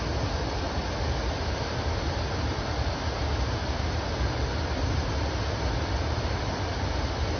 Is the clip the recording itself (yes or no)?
yes